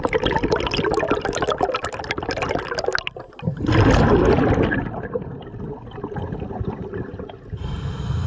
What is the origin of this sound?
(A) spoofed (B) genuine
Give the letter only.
B